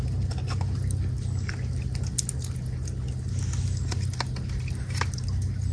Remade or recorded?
recorded